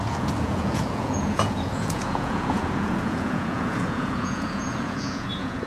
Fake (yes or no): yes